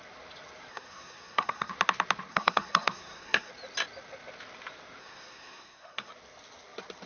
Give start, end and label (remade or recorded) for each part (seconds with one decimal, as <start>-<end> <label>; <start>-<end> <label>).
0.0-0.7 recorded; 0.7-1.7 remade; 1.7-2.3 recorded; 2.3-3.5 remade; 3.5-5.0 recorded; 5.0-6.1 remade; 6.1-7.1 recorded